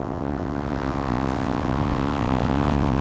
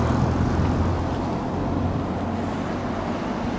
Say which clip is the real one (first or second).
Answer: second